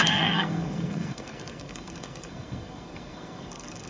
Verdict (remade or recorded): remade